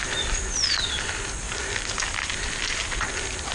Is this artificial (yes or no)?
no